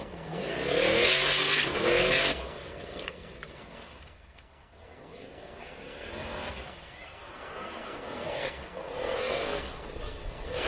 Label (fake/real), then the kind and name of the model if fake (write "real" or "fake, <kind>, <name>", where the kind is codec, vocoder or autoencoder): fake, codec, SNAC